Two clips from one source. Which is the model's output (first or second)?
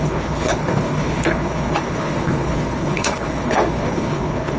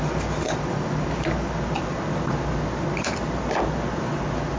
first